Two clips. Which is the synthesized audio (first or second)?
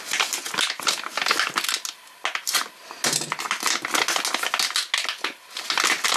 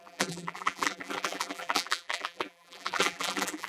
second